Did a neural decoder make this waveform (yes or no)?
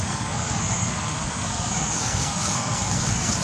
yes